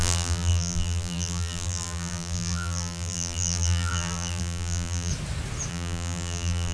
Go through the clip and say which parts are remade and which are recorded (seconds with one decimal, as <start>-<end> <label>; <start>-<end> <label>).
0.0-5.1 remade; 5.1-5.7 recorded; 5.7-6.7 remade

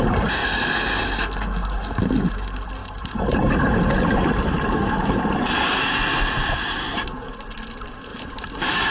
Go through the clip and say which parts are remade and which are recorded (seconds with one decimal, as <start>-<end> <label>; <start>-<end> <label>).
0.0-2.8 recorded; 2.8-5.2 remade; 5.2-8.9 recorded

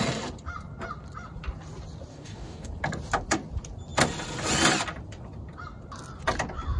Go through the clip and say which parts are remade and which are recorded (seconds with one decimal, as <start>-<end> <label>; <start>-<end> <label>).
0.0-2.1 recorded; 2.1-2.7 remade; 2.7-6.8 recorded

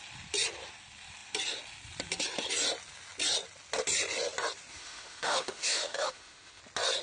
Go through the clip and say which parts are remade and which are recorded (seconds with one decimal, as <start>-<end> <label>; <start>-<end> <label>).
0.0-4.7 recorded; 4.7-6.6 remade; 6.6-7.0 recorded

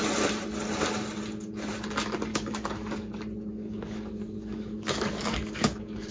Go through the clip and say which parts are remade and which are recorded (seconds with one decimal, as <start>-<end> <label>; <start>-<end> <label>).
0.0-2.3 recorded; 2.3-3.1 remade; 3.1-3.5 recorded; 3.5-6.1 remade

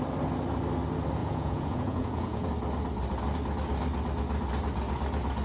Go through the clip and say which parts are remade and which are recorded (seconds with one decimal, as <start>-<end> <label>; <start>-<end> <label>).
0.0-1.2 recorded; 1.2-2.5 remade; 2.5-5.4 recorded